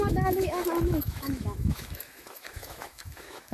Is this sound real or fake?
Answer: fake